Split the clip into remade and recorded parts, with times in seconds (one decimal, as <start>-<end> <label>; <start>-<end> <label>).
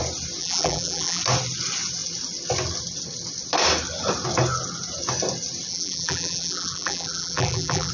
0.0-0.4 recorded; 0.4-1.2 remade; 1.2-5.7 recorded; 5.7-7.9 remade